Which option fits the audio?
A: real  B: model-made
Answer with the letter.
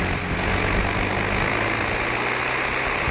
A